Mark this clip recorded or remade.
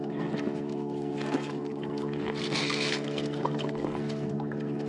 remade